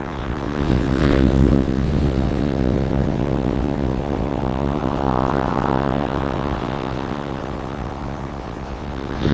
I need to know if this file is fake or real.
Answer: fake